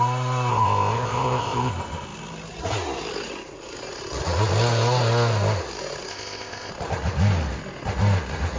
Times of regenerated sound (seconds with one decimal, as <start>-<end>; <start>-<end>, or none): 0.5-1.7; 6.1-6.7